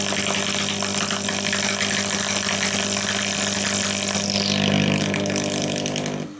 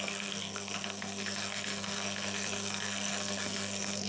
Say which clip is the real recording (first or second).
first